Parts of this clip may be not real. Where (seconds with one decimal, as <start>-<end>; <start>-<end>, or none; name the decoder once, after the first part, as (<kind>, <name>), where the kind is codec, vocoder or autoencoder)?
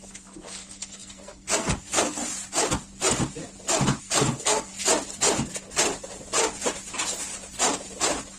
0.0-2.2 (codec, SNAC); 4.0-4.7